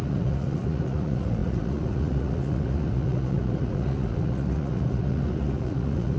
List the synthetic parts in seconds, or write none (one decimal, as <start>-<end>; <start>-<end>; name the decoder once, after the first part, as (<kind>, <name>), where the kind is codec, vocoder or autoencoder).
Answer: 0.0-6.2 (vocoder, Vocos)